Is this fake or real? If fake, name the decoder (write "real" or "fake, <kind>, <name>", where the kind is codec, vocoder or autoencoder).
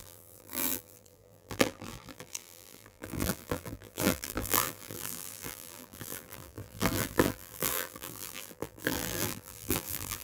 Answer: fake, vocoder, BigVGAN v2